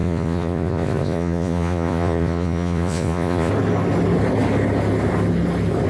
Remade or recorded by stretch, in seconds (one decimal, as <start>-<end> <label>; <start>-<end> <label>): 0.0-3.5 remade; 3.5-5.9 recorded